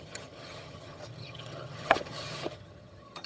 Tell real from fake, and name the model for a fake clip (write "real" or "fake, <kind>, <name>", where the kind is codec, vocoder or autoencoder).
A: fake, vocoder, HiFi-GAN